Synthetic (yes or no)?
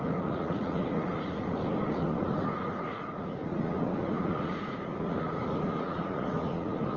yes